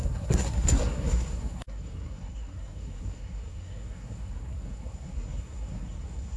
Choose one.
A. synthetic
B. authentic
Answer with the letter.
A